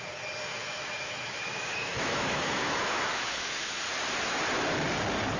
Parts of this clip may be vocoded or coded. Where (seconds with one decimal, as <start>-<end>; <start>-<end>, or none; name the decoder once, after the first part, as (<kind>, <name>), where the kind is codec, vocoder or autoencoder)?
0.6-3.8 (autoencoder, DAC-VAE)